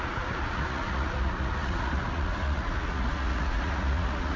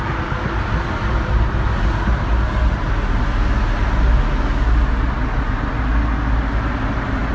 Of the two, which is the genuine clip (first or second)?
second